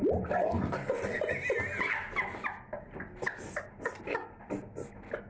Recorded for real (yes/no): yes